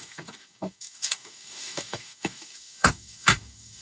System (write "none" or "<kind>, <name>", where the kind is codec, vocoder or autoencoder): codec, DAC